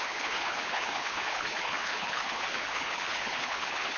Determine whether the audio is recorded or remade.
remade